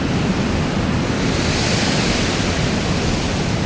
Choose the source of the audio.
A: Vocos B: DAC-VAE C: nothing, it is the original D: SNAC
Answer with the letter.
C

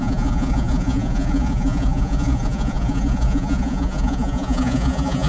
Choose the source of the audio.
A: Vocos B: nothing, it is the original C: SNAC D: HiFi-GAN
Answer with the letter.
A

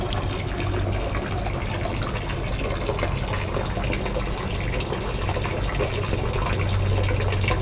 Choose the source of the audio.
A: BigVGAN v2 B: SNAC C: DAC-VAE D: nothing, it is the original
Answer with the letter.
D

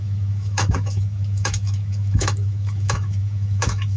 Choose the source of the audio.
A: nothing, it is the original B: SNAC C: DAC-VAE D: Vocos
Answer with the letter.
C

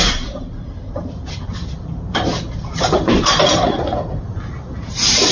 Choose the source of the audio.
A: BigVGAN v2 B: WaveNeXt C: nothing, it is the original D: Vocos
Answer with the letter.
A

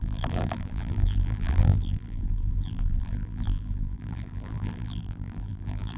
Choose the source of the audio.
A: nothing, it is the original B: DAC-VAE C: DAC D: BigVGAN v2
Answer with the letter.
D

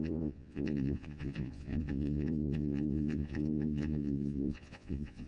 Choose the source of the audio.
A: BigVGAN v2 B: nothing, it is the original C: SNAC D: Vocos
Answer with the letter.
D